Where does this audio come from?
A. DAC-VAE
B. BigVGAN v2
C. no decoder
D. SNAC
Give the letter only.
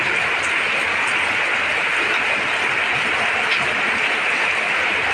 C